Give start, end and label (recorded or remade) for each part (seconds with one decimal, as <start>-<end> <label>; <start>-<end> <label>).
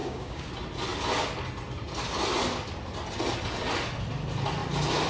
0.0-0.5 remade; 0.5-5.1 recorded